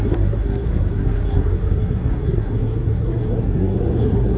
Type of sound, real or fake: fake